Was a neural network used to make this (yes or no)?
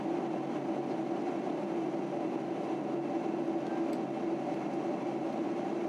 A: no